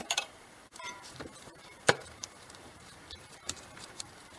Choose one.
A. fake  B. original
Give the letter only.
A